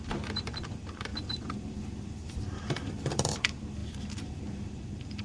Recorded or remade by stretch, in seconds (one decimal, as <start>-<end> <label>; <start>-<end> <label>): 0.0-5.2 remade